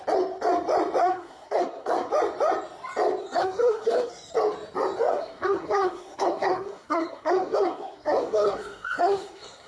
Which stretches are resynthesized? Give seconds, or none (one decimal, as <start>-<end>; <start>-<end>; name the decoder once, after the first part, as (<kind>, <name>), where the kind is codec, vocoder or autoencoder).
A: 1.0-2.1 (codec, SNAC); 3.2-4.1; 5.1-9.7